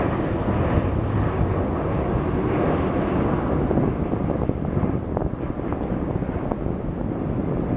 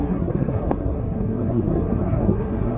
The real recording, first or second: first